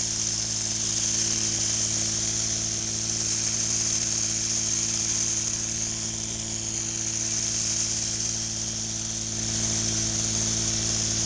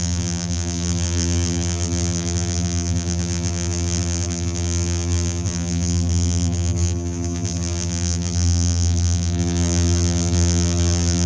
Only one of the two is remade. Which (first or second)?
second